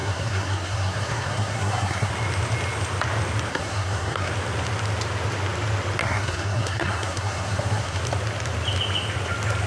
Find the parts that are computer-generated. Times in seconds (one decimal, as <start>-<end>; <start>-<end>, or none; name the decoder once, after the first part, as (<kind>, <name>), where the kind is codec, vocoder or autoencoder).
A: 0.0-2.1 (codec, SNAC); 3.5-4.3; 6.0-8.0